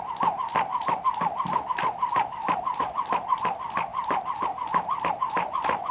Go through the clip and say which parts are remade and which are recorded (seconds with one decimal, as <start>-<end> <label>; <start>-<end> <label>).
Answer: 0.0-5.9 recorded